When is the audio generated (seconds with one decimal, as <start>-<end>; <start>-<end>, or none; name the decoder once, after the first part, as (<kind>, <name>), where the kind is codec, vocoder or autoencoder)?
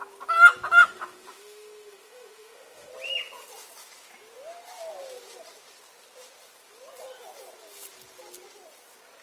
0.8-2.9 (autoencoder, DAC-VAE)